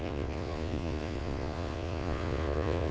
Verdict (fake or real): fake